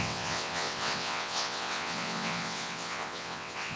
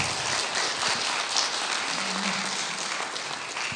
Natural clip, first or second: second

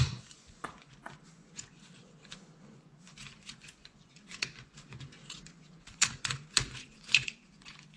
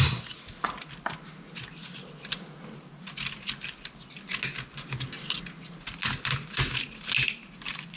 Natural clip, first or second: second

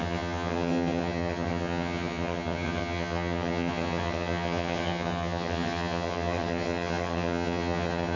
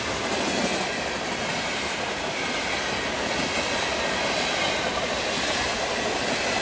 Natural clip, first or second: second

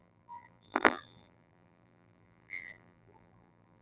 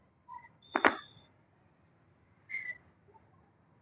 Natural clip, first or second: second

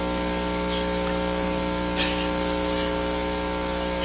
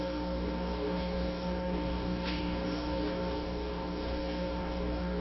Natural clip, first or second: first